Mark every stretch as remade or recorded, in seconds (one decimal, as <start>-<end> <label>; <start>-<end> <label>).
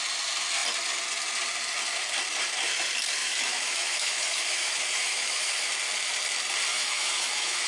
0.0-3.2 recorded; 3.2-5.7 remade; 5.7-6.7 recorded; 6.7-7.7 remade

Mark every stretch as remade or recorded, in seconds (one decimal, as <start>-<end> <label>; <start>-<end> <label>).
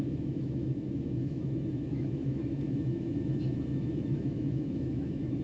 0.0-5.4 remade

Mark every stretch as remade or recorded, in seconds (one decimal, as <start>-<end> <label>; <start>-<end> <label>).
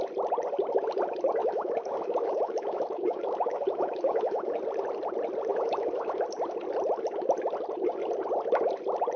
0.0-1.4 recorded; 1.4-4.6 remade; 4.6-5.5 recorded; 5.5-6.2 remade; 6.2-9.2 recorded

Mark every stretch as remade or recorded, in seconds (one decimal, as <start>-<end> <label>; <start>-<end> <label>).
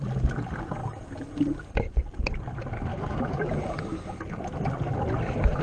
0.0-2.9 recorded; 2.9-3.7 remade; 3.7-5.6 recorded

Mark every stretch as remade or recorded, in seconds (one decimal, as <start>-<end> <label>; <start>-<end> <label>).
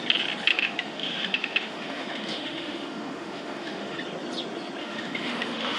0.0-0.5 recorded; 0.5-4.0 remade; 4.0-4.8 recorded; 4.8-5.8 remade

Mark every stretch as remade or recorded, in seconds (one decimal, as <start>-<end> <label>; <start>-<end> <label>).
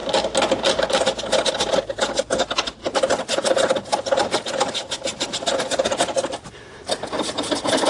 0.0-7.9 recorded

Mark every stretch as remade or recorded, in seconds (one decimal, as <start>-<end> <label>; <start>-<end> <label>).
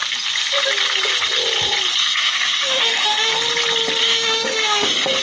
0.0-2.0 recorded; 2.0-3.3 remade; 3.3-4.0 recorded; 4.0-5.2 remade